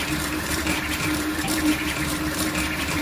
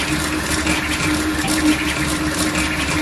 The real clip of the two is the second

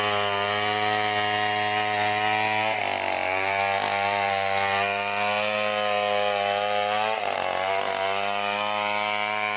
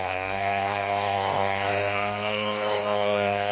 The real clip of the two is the first